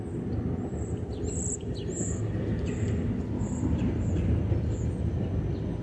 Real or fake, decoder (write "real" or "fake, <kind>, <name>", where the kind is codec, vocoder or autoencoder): real